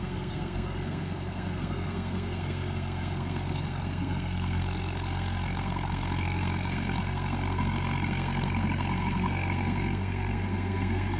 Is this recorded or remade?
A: remade